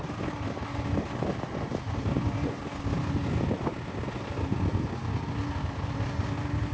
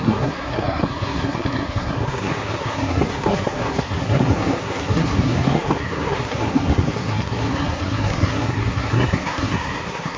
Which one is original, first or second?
first